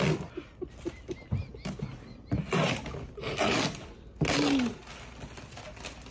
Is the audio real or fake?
real